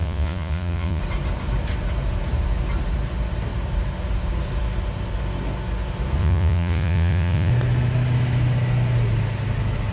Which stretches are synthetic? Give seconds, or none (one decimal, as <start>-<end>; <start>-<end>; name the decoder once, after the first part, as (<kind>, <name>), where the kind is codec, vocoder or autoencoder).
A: 0.0-1.0 (vocoder, Vocos); 6.2-7.5